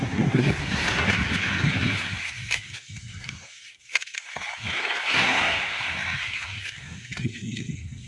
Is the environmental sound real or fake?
fake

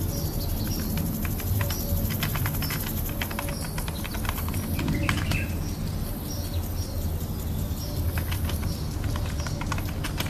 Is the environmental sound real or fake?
real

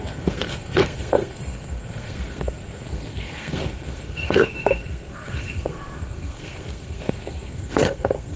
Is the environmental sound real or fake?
fake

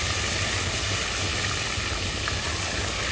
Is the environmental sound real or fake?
real